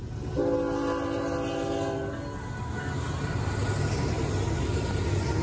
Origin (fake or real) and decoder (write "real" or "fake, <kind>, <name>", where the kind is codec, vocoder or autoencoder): real